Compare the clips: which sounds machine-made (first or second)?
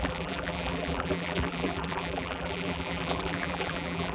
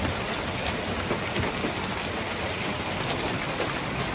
first